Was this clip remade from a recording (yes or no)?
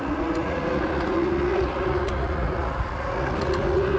yes